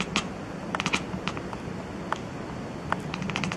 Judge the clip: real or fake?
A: real